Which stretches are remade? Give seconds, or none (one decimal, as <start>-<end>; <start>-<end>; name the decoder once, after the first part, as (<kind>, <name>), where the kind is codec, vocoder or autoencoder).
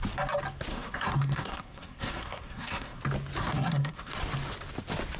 0.7-3.0 (codec, SNAC); 3.4-4.1